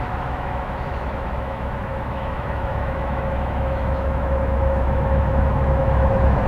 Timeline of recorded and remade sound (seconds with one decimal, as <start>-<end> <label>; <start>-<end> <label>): 0.0-6.5 remade